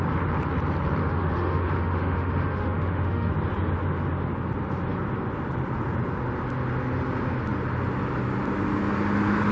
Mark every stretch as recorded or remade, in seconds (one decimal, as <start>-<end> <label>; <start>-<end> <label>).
0.0-1.0 recorded; 1.0-3.3 remade; 3.3-9.5 recorded